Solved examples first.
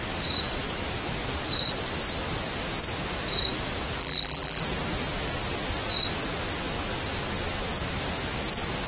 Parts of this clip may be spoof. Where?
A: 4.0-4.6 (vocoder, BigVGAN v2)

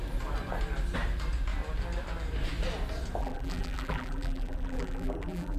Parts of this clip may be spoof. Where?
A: 3.2-5.6 (vocoder, BigVGAN v2)

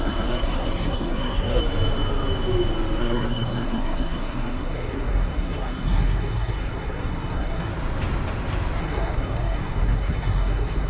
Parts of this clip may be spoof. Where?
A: 0.0-1.6 (codec, SNAC); 3.0-7.7; 8.8-10.9